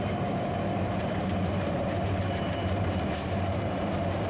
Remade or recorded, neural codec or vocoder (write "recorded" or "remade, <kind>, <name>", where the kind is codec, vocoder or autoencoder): remade, vocoder, BigVGAN v2